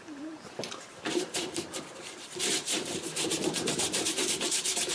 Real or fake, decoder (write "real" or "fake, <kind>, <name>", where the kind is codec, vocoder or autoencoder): fake, vocoder, BigVGAN v2